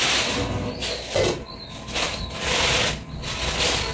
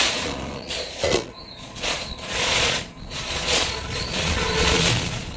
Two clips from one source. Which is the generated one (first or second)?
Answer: second